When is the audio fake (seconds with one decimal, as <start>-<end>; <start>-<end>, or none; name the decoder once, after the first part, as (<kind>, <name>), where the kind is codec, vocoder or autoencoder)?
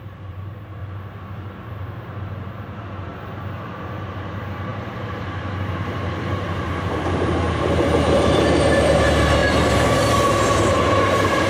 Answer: 0.0-0.8 (vocoder, BigVGAN v2); 2.3-3.1; 3.8-11.5